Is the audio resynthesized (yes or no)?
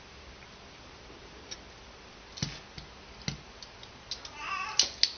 no